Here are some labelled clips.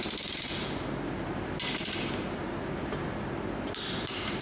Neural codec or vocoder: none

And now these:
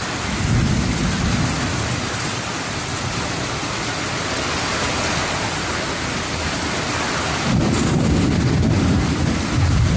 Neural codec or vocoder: none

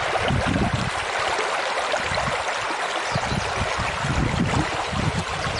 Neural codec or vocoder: none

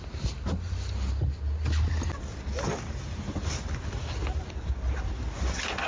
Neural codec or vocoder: none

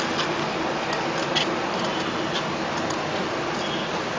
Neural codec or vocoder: none